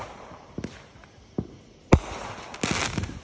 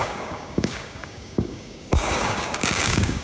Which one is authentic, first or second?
first